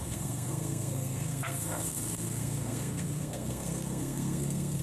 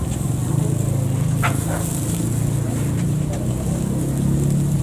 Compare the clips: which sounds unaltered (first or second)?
second